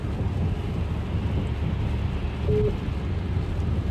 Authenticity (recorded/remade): recorded